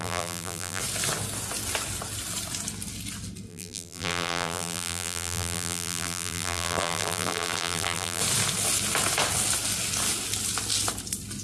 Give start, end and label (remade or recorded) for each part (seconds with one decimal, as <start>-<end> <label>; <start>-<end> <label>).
0.0-0.8 remade; 0.8-3.5 recorded; 3.5-8.2 remade; 8.2-11.4 recorded